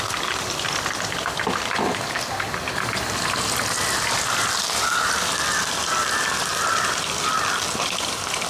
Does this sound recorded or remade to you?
recorded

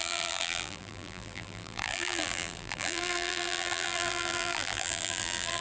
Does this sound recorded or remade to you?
remade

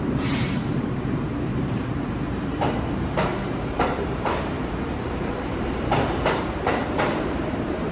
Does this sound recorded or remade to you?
remade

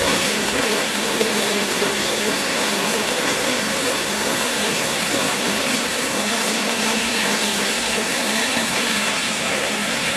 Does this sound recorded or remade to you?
remade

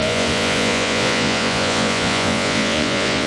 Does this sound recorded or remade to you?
remade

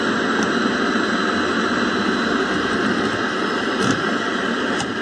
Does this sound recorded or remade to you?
recorded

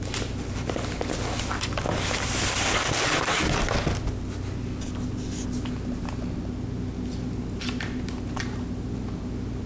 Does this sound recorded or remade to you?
recorded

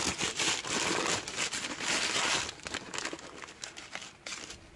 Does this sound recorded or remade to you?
recorded